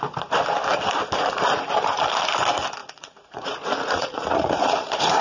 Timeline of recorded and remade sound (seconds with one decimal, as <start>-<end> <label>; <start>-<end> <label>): 0.0-2.8 recorded; 2.8-5.2 remade